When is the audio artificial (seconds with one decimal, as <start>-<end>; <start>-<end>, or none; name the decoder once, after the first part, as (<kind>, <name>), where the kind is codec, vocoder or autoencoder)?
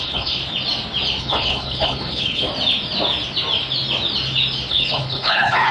0.0-0.4 (codec, HILCodec); 1.2-2.5; 4.7-5.7